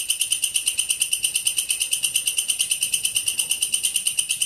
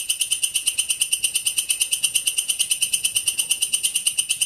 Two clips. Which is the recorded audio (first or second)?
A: first